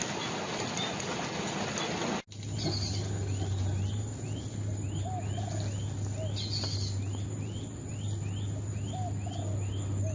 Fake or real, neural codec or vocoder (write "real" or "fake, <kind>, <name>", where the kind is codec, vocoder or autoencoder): real